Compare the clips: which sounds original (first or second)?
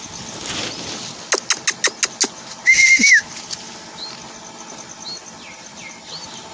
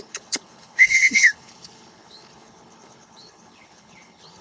first